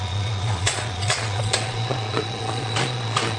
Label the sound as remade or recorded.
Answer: remade